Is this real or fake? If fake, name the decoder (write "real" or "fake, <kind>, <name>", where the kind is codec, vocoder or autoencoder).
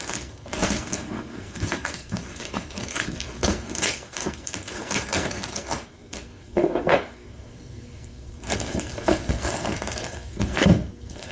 fake, codec, SNAC